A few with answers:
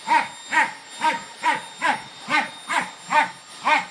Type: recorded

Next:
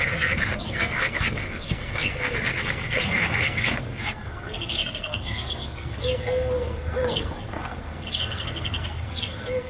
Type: remade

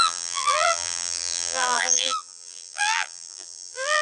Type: remade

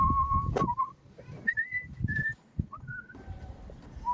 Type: remade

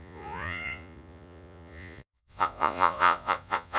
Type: remade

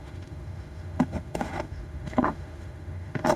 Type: remade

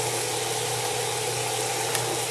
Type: recorded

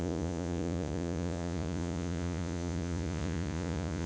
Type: remade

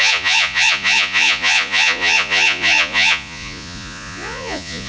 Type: remade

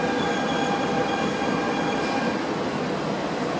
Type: recorded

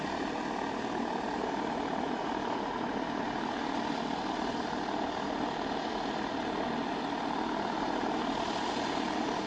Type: recorded